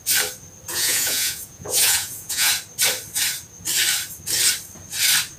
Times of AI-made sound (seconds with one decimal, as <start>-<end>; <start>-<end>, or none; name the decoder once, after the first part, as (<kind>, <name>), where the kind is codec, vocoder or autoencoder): 0.7-2.5 (vocoder, Vocos)